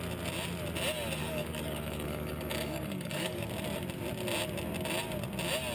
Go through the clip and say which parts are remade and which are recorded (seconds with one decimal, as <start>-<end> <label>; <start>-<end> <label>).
0.0-1.2 recorded; 1.2-3.5 remade; 3.5-5.7 recorded